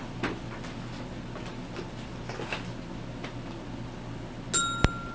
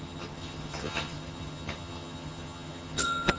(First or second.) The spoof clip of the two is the second